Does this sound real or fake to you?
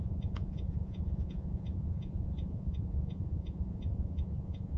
fake